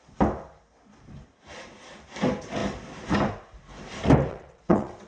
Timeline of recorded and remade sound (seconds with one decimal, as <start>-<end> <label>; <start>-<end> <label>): 0.0-4.3 recorded; 4.3-5.1 remade